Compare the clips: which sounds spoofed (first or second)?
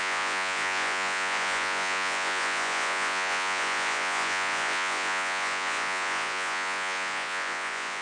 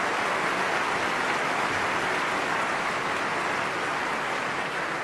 first